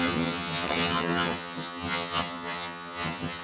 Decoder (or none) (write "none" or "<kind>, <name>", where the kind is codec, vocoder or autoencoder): vocoder, HiFi-GAN